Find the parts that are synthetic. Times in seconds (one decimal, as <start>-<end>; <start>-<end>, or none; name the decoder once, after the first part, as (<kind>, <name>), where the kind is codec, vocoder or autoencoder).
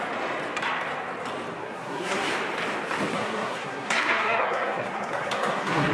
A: 1.6-2.3 (codec, SNAC); 3.1-5.9